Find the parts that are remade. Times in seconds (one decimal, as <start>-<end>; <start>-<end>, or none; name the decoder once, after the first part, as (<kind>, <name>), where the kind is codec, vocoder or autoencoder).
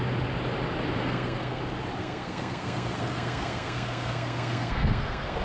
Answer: 1.0-1.6 (codec, SNAC); 2.0-5.4